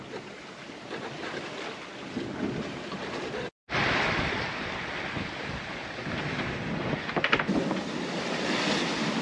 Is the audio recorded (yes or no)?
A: yes